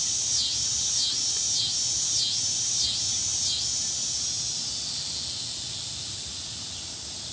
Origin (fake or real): real